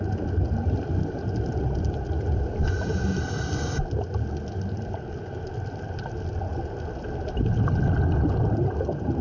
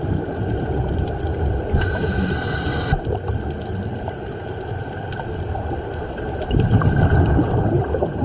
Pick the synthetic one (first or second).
second